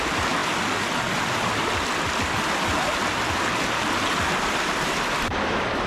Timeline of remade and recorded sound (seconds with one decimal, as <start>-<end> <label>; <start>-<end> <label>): 0.0-5.9 recorded